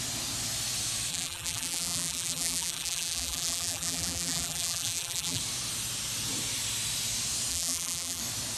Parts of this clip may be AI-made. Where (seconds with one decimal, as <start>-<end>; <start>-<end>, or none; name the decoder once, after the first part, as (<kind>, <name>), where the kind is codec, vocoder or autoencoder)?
1.1-5.4 (vocoder, BigVGAN v2); 7.5-8.2